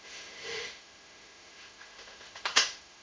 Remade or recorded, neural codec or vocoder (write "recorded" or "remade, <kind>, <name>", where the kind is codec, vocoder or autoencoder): remade, autoencoder, DAC-VAE